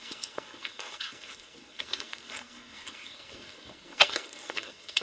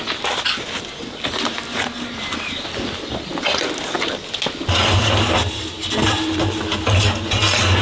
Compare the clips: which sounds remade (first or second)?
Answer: first